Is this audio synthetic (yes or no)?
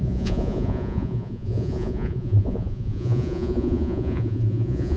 yes